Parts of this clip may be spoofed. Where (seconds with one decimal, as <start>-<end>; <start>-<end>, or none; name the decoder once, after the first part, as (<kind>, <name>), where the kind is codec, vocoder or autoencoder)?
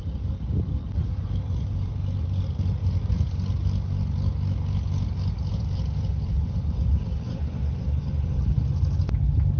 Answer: 5.5-8.9 (vocoder, BigVGAN v2)